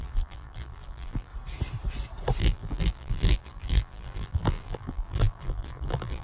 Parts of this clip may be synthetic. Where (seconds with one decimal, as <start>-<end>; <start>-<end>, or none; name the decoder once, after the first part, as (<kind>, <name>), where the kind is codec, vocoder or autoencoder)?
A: 0.0-1.3 (vocoder, BigVGAN v2); 2.4-6.2